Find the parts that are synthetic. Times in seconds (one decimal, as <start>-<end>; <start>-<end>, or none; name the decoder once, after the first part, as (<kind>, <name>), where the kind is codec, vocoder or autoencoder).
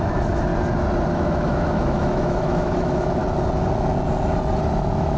0.0-0.5 (autoencoder, DAC-VAE); 1.1-3.2; 4.7-5.2